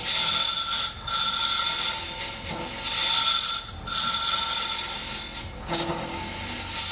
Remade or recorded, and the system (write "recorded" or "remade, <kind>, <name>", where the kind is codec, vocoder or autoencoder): recorded